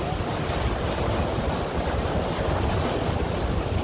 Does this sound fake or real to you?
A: real